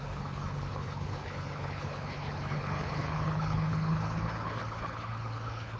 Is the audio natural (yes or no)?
no